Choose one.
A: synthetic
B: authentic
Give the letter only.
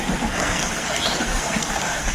A